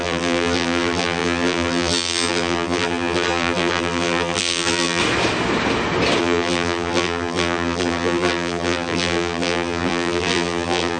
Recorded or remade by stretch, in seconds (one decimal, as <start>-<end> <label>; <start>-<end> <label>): 0.0-5.0 remade; 5.0-6.2 recorded; 6.2-11.0 remade